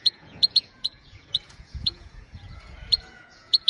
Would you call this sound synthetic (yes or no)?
yes